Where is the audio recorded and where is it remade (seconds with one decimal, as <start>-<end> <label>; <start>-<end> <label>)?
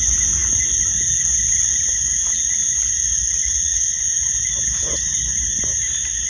0.0-3.4 recorded; 3.4-4.0 remade; 4.0-6.3 recorded